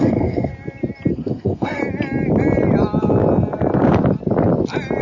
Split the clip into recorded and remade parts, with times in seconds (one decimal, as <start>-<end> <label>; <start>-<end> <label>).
0.0-0.5 remade; 0.5-1.1 recorded; 1.1-1.8 remade; 1.8-5.0 recorded